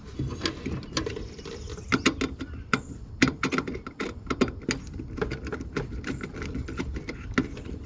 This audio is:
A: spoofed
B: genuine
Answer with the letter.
B